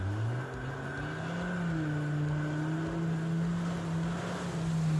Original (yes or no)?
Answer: yes